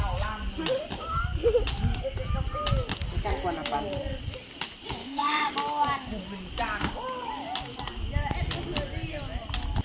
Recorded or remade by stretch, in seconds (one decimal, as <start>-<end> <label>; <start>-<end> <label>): 0.0-5.0 recorded; 5.0-5.5 remade; 5.5-9.8 recorded